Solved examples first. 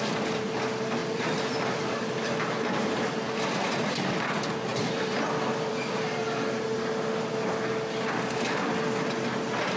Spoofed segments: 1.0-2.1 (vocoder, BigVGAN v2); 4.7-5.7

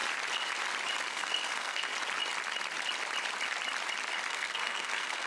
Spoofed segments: 1.1-1.9 (codec, SNAC); 4.3-5.3

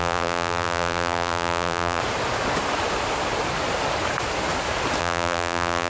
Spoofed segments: 0.0-2.0 (vocoder, BigVGAN v2); 5.0-5.9

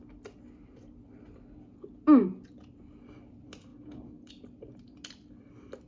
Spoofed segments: 3.7-4.3 (vocoder, Vocos)

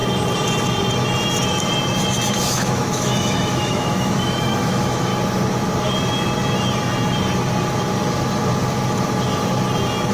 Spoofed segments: 2.3-5.1 (autoencoder, DAC-VAE)